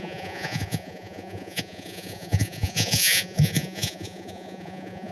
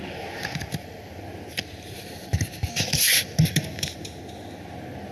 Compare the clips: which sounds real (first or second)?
second